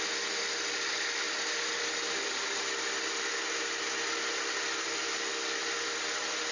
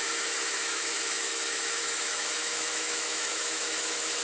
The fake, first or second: second